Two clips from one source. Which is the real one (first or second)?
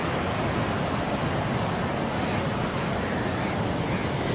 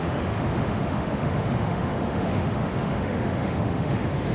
first